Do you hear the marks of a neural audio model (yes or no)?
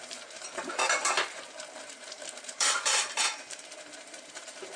yes